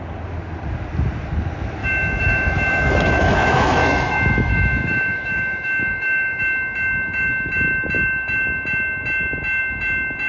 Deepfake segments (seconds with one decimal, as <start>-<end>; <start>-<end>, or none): 1.8-6.4

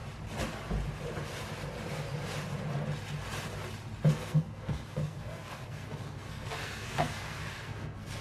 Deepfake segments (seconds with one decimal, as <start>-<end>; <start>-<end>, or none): 4.1-8.2

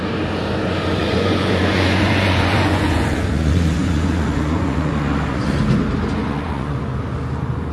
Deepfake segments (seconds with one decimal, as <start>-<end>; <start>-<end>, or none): 1.0-5.6; 6.2-6.8